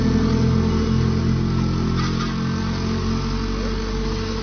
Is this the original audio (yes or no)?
yes